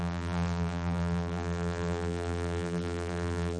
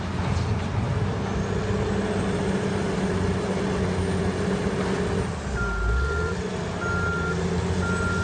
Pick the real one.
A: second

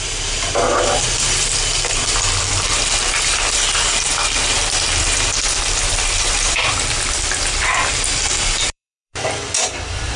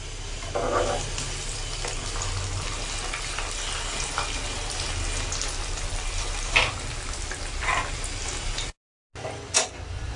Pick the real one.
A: second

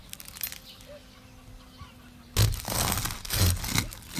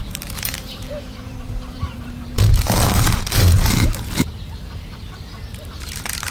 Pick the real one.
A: first